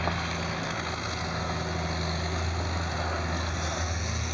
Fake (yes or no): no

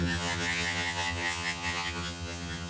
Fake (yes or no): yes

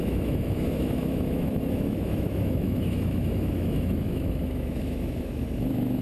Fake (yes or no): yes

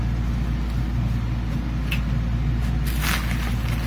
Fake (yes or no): no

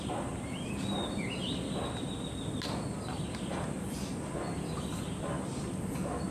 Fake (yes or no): no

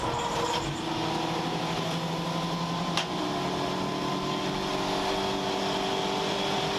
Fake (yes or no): no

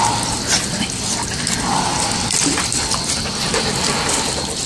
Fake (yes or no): no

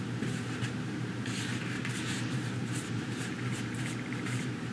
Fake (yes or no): yes